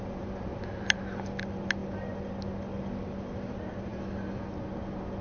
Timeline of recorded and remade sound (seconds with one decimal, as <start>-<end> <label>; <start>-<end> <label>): 0.0-5.2 recorded